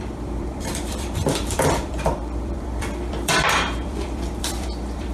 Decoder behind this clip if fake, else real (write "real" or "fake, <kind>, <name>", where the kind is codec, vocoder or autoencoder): fake, vocoder, BigVGAN v2